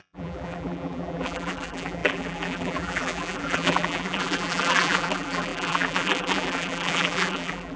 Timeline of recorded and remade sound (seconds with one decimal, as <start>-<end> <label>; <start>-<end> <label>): 0.0-7.8 remade